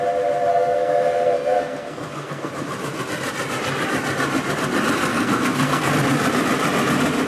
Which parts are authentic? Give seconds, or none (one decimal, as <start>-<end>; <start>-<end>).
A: 0.0-0.5; 2.5-5.1; 5.9-7.3